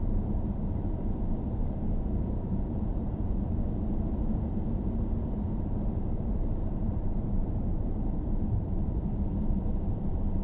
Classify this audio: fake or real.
fake